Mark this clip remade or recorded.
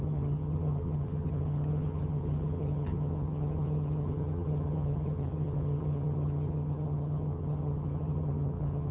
remade